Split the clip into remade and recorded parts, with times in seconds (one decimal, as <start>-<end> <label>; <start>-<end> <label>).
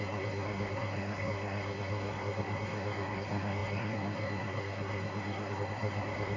0.0-6.4 remade